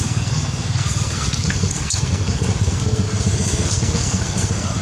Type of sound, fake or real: fake